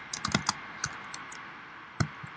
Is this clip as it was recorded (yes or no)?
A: yes